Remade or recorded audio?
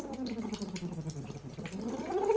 recorded